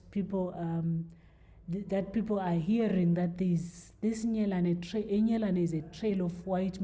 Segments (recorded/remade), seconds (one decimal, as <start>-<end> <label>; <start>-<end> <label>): 0.0-6.8 recorded